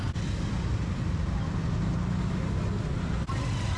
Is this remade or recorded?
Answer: recorded